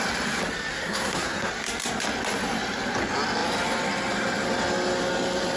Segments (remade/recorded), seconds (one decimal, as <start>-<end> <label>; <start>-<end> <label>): 0.0-0.7 recorded; 0.7-1.5 remade; 1.5-5.6 recorded